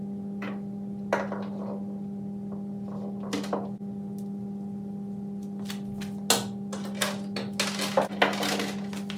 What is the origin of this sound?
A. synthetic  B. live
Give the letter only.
B